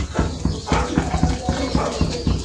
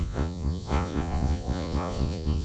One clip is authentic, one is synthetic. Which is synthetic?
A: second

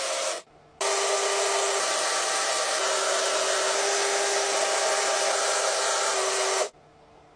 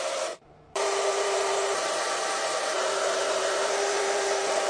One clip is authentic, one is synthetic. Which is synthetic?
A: second